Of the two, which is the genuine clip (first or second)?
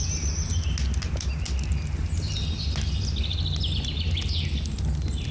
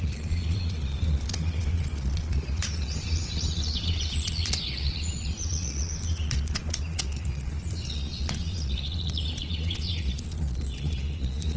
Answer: first